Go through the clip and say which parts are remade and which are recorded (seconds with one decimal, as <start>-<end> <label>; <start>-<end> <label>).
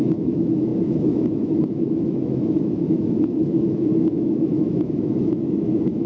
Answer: 0.0-6.1 remade